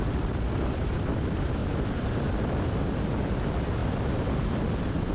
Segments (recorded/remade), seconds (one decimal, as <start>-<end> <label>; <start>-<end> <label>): 0.0-1.6 remade; 1.6-2.8 recorded; 2.8-3.8 remade; 3.8-4.4 recorded; 4.4-5.1 remade